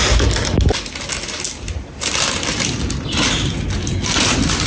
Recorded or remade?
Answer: recorded